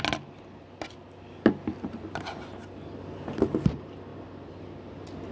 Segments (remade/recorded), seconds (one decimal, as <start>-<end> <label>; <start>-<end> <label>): 0.0-5.3 recorded